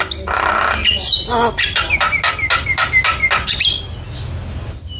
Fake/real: real